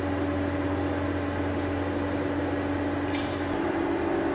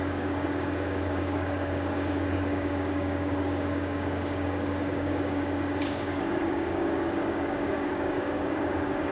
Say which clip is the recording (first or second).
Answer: first